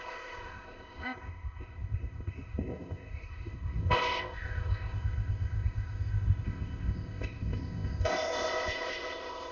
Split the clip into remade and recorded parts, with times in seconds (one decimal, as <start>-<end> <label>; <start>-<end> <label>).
0.0-9.5 remade